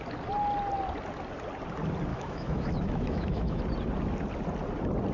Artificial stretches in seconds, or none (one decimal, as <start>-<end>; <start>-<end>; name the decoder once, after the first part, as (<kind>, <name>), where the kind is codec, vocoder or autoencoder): 2.1-3.6 (autoencoder, DAC-VAE)